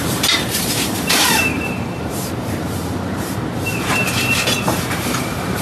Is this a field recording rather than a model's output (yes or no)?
no